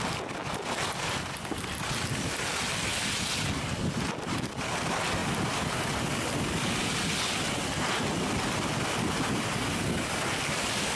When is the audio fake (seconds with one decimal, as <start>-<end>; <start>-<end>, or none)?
none